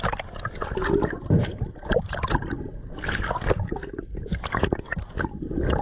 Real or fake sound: real